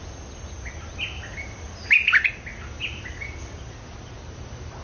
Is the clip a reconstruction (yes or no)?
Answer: no